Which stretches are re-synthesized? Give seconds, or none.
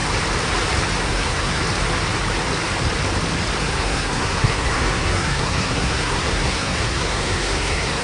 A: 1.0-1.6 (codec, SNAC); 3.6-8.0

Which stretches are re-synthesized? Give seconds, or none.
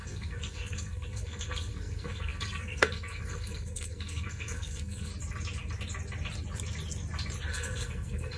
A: 0.0-5.1 (codec, SNAC); 7.5-8.4